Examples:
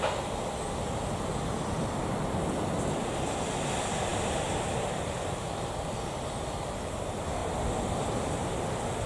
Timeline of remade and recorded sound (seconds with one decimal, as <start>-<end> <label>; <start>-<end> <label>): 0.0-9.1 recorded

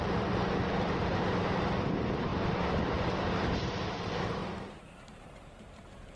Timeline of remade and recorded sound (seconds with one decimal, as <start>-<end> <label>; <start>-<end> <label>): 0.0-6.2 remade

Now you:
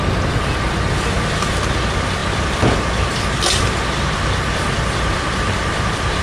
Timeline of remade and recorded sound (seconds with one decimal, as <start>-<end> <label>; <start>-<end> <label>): 0.0-2.2 recorded; 2.2-6.2 remade

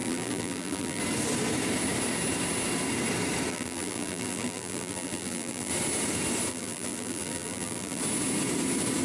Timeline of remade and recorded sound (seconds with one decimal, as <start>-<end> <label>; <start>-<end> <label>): 0.0-1.0 remade; 1.0-3.5 recorded; 3.5-5.7 remade; 5.7-6.5 recorded; 6.5-8.0 remade; 8.0-9.0 recorded